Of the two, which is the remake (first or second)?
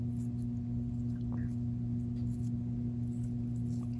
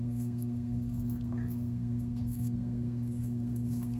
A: second